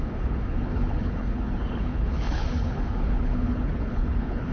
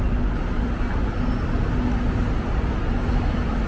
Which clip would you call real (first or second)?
second